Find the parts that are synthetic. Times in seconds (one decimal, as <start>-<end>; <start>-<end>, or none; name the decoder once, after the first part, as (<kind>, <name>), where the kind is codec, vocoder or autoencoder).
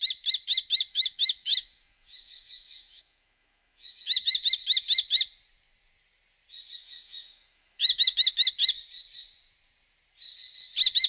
0.9-4.4 (autoencoder, DAC-VAE); 6.8-8.5